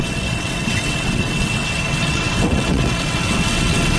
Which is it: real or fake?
fake